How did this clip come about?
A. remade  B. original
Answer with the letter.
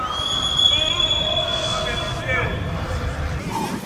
B